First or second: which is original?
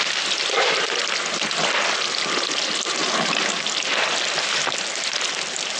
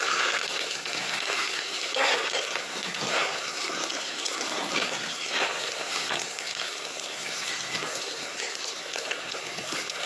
first